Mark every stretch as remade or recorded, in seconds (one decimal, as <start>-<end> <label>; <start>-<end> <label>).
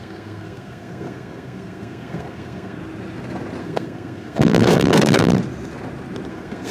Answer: 0.0-2.8 remade; 2.8-3.6 recorded; 3.6-5.3 remade; 5.3-6.3 recorded; 6.3-6.7 remade